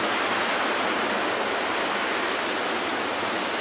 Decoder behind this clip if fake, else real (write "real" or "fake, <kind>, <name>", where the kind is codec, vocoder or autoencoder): real